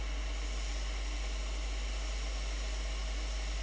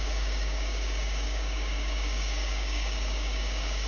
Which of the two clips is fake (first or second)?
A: second